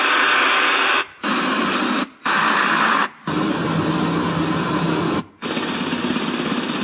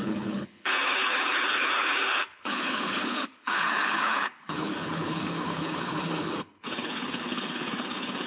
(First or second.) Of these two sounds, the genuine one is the first